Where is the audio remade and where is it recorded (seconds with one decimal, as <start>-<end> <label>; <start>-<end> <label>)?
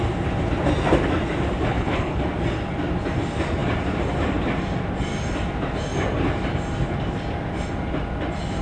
0.0-1.7 recorded; 1.7-2.2 remade; 2.2-8.6 recorded